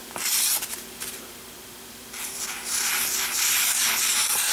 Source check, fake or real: real